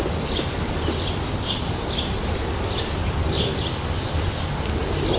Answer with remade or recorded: remade